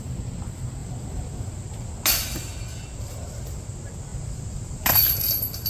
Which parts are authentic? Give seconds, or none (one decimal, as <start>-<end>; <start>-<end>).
0.0-0.8; 1.7-4.1; 5.2-5.7